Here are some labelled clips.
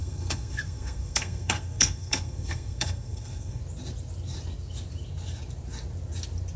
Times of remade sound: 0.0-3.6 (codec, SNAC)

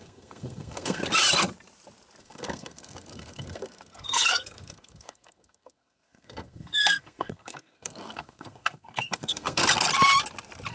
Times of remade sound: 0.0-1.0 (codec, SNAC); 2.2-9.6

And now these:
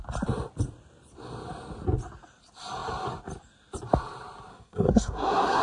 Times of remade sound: 4.5-5.6 (codec, SNAC)

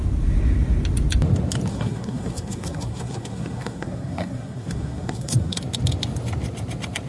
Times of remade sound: 1.7-5.6 (codec, SNAC)

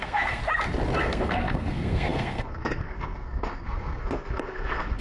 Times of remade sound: 0.0-0.4 (codec, SNAC); 1.0-5.0